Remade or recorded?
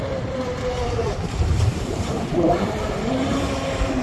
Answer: remade